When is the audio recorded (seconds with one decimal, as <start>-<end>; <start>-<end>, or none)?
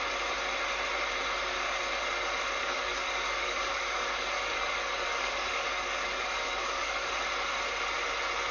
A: 0.0-2.6; 7.1-8.5